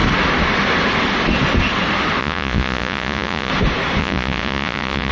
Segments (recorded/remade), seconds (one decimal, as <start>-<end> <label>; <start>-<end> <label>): 0.0-2.2 recorded; 2.2-3.5 remade; 3.5-4.0 recorded; 4.0-5.1 remade